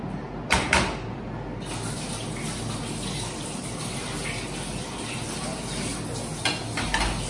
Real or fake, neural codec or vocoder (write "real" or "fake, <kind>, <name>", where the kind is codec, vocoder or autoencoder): real